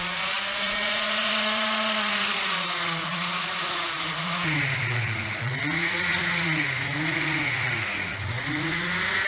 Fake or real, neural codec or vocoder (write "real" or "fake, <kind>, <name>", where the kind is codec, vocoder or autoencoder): fake, vocoder, Vocos